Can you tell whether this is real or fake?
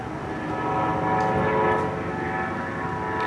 real